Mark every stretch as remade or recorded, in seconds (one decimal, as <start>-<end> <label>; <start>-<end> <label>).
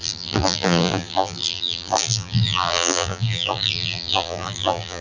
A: 0.0-5.0 remade